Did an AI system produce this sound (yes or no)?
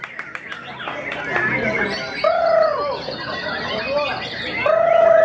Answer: no